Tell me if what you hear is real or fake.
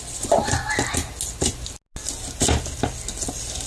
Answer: real